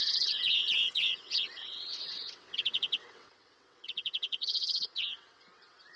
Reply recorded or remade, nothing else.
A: remade